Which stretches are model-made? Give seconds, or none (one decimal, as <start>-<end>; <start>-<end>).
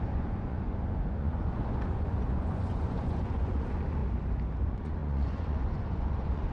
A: 0.0-4.0; 4.6-6.5